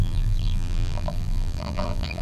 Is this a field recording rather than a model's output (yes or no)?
no